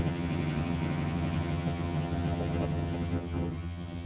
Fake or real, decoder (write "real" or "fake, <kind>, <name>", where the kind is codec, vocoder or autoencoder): fake, vocoder, HiFi-GAN